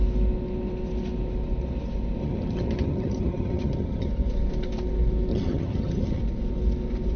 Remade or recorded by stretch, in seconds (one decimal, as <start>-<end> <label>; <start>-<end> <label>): 0.0-2.2 recorded; 2.2-4.1 remade; 4.1-5.3 recorded; 5.3-6.2 remade; 6.2-7.2 recorded